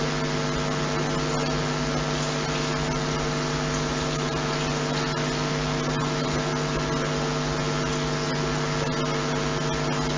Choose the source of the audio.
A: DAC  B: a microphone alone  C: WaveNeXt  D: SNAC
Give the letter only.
B